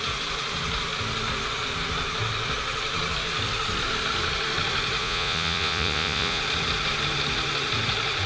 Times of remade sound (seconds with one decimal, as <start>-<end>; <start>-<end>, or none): 5.0-6.4